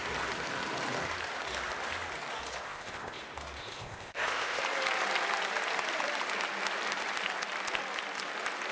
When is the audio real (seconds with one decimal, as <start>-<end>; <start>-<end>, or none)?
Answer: 0.0-2.6; 3.2-3.6; 4.6-8.7